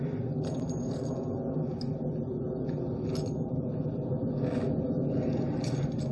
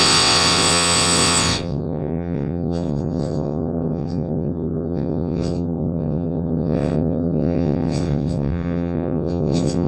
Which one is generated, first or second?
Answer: second